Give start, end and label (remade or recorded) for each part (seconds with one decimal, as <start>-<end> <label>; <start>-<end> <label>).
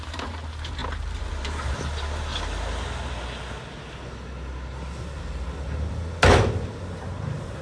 0.0-2.3 remade; 2.3-6.9 recorded; 6.9-7.6 remade